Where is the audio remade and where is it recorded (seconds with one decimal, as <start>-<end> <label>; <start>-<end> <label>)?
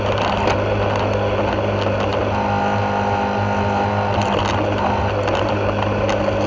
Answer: 0.0-6.5 recorded